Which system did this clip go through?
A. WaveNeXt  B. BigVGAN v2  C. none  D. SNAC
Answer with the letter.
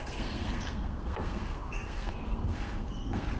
D